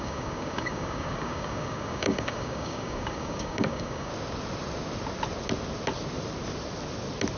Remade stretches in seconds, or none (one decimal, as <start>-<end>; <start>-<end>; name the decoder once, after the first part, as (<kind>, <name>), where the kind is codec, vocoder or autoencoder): 0.0-4.1 (codec, DAC)